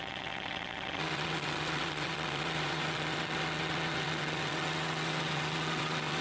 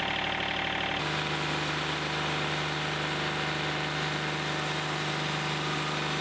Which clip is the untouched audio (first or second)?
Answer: second